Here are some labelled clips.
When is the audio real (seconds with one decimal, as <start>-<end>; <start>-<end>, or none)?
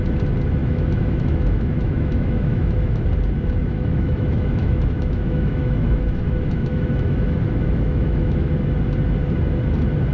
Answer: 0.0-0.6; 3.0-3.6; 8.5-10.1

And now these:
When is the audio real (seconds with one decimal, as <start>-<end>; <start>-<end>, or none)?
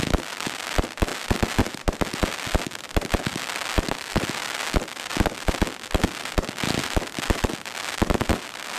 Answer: 0.0-8.8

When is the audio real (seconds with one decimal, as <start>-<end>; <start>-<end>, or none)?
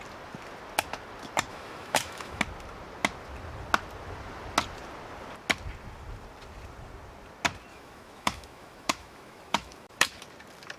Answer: 0.0-1.5; 2.4-7.7; 10.2-10.8